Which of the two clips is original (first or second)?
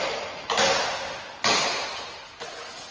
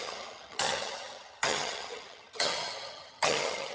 first